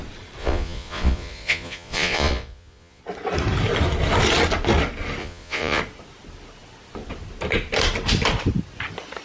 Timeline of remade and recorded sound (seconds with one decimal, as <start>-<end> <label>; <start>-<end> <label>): 0.0-0.4 recorded; 0.4-3.0 remade; 3.0-5.2 recorded; 5.2-5.8 remade; 5.8-9.2 recorded